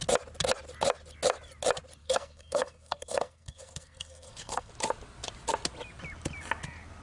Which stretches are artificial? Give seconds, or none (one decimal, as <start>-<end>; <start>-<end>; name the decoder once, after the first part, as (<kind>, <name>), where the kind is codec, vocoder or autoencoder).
2.0-4.7 (codec, SNAC)